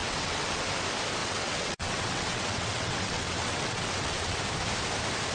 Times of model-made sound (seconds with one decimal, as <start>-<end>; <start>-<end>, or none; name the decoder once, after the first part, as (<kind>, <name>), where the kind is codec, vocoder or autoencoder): 0.0-0.6 (vocoder, WaveNeXt); 1.2-4.4